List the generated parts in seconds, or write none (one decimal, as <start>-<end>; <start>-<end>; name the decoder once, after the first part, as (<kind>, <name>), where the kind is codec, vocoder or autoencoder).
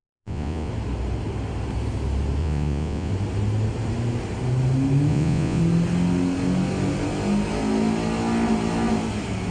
0.0-0.7 (vocoder, Vocos); 2.4-3.1; 5.1-5.6